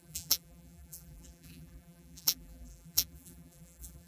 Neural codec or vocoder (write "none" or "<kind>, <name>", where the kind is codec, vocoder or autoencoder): vocoder, BigVGAN v2